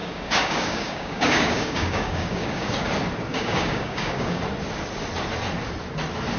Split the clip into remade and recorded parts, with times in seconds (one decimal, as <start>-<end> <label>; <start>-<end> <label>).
0.0-2.9 remade; 2.9-3.3 recorded; 3.3-4.4 remade; 4.4-6.4 recorded